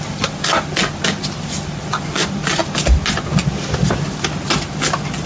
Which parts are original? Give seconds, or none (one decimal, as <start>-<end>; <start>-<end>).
0.0-5.3